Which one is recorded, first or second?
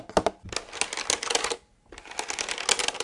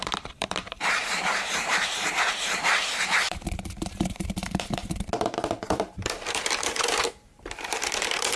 first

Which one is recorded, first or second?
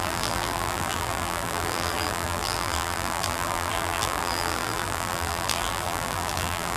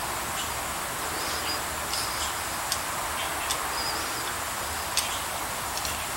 second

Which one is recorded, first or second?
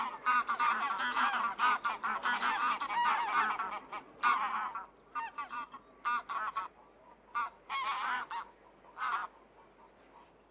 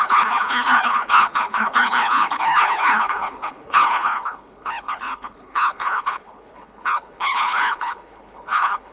first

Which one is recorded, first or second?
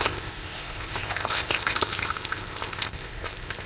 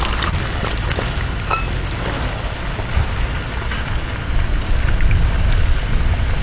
second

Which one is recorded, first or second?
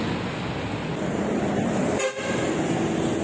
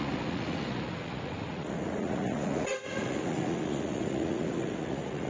first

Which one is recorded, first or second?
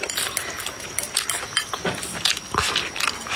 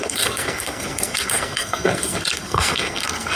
first